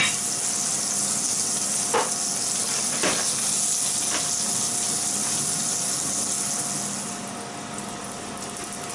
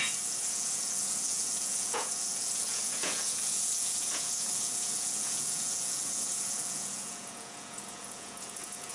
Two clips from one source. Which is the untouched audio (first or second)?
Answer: first